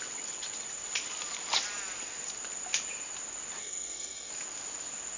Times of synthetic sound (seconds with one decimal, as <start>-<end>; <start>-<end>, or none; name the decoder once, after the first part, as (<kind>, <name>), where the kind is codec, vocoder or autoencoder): 3.6-4.3 (codec, SNAC)